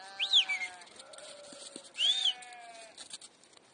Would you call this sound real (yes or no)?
yes